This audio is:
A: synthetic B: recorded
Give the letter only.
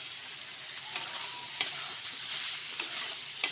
B